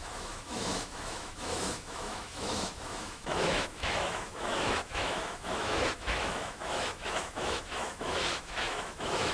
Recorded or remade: remade